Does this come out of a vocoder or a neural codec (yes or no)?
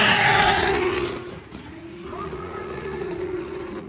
yes